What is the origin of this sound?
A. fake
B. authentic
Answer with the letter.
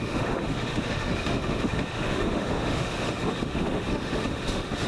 A